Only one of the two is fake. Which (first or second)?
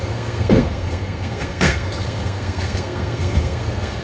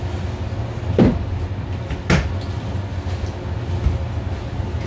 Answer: first